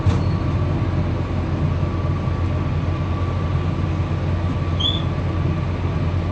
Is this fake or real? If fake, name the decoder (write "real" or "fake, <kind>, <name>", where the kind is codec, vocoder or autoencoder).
real